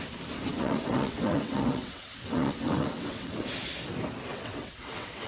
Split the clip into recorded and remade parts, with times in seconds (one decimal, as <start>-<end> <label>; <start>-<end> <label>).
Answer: 0.0-0.5 recorded; 0.5-3.4 remade; 3.4-4.3 recorded; 4.3-5.3 remade